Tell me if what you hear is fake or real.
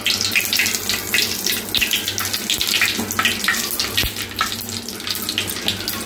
real